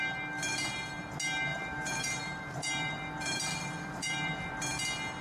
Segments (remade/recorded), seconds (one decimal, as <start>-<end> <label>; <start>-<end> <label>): 0.0-1.5 recorded; 1.5-4.6 remade; 4.6-5.2 recorded